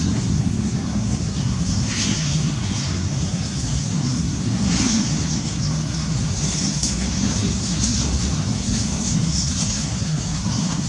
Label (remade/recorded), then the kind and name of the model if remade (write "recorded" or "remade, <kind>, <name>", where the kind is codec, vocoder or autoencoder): remade, codec, SNAC